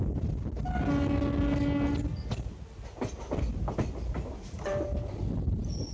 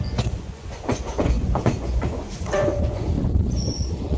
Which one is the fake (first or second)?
second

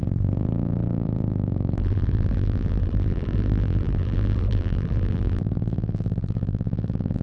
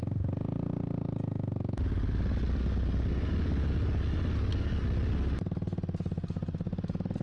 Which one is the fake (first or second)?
first